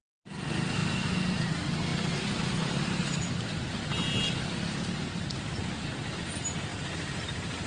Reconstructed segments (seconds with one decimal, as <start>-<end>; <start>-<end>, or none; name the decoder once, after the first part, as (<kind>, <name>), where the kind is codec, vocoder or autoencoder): 6.7-7.7 (vocoder, BigVGAN v2)